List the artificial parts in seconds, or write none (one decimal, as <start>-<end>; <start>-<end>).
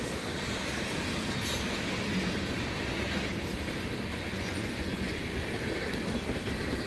4.1-5.2